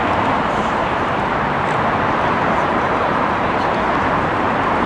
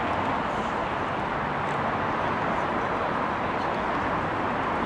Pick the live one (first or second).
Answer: second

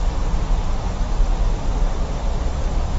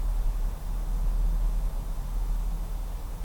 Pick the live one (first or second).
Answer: second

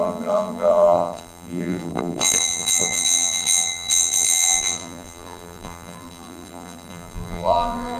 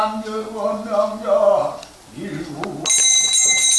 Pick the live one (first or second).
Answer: second